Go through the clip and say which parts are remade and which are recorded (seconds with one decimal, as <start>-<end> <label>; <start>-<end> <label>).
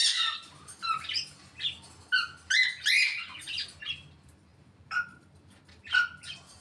0.0-3.8 recorded; 3.8-6.6 remade